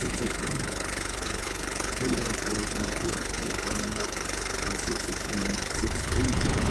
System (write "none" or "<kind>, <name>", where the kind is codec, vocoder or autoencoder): codec, HILCodec